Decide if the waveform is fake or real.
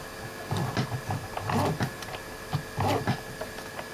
real